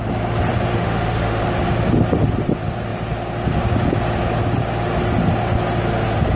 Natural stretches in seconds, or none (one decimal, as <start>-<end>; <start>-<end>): 0.0-0.7; 1.4-6.4